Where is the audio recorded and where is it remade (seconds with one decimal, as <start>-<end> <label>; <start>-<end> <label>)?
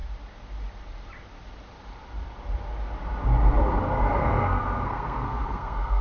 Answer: 0.0-4.2 recorded; 4.2-6.0 remade